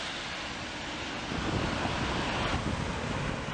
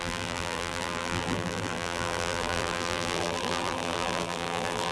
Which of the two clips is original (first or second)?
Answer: first